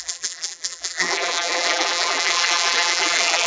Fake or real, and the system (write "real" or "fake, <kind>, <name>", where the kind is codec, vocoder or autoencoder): fake, vocoder, BigVGAN v2